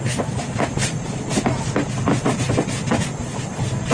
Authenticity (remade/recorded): recorded